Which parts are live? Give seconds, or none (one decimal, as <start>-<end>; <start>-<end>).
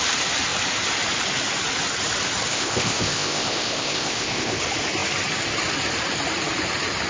0.0-2.5; 4.6-7.1